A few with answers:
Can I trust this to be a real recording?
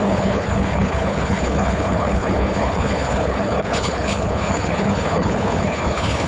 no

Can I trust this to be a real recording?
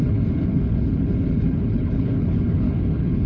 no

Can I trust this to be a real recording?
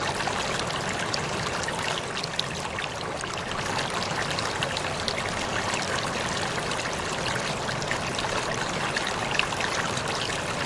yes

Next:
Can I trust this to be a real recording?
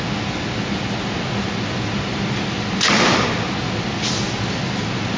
yes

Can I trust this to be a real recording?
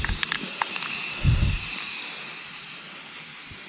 yes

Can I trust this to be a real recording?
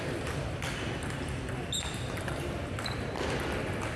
yes